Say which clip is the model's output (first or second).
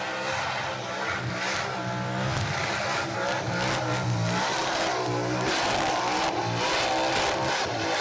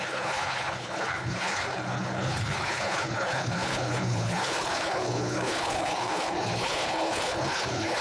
second